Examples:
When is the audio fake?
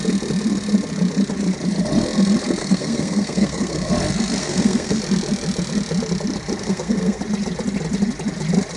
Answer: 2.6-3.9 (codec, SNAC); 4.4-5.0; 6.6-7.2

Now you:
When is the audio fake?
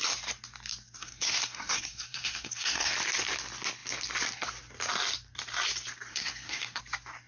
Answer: 1.0-2.9 (codec, SNAC); 6.1-6.8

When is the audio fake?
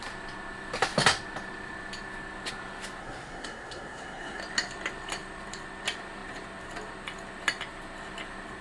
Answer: 3.0-4.4 (codec, SNAC)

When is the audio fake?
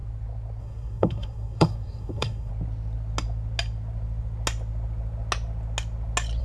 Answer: 0.6-2.5 (codec, SNAC)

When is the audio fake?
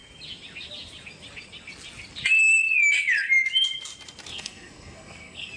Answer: 4.3-5.6 (codec, SNAC)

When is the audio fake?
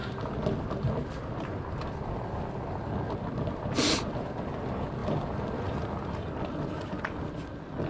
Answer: none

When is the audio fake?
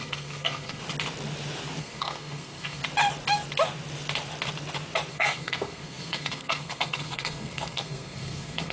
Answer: 0.0-0.8 (codec, SNAC); 1.8-2.8; 5.1-8.7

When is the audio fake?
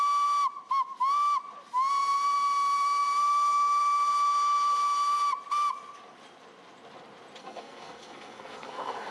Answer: 7.4-9.1 (codec, SNAC)